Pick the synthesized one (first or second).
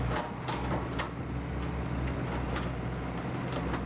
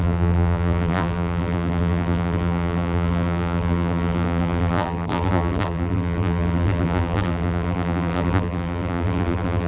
second